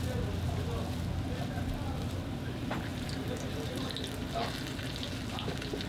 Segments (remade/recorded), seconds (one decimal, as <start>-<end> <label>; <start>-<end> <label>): 0.0-5.9 recorded